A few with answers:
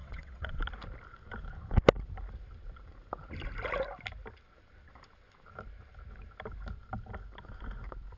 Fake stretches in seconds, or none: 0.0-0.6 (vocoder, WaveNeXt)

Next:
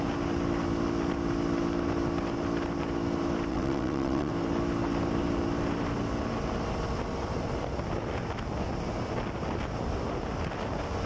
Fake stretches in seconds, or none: 3.5-4.3 (vocoder, WaveNeXt)

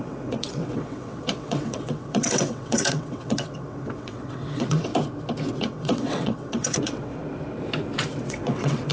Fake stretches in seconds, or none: 0.0-4.9 (vocoder, WaveNeXt); 5.5-7.2; 8.2-8.9

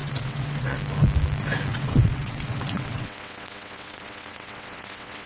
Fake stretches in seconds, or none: 0.0-0.8 (vocoder, WaveNeXt); 1.7-5.3

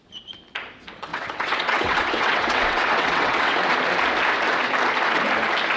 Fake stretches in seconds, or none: 1.1-3.7 (vocoder, WaveNeXt)

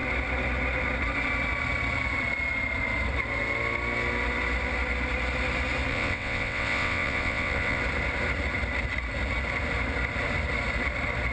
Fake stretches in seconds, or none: 5.9-7.8 (vocoder, WaveNeXt)

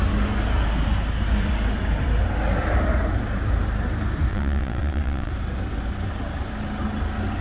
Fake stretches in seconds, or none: 4.3-5.3 (vocoder, WaveNeXt)

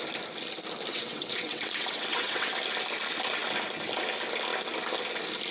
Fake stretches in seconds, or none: 0.9-2.5 (vocoder, WaveNeXt)